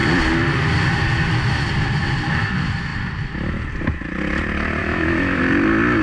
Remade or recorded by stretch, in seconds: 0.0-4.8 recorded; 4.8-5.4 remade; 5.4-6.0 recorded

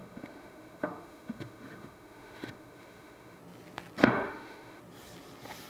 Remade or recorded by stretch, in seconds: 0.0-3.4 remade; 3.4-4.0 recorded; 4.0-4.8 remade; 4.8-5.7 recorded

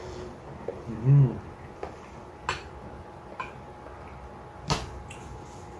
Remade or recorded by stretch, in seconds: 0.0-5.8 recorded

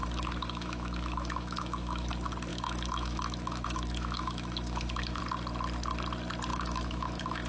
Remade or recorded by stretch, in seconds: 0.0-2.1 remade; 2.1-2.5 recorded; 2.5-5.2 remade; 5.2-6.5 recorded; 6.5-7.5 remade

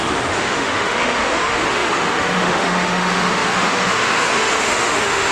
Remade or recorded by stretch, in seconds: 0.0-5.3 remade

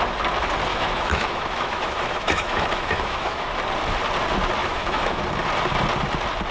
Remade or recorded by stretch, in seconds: 0.0-0.7 recorded; 0.7-3.6 remade; 3.6-4.6 recorded; 4.6-5.2 remade; 5.2-6.5 recorded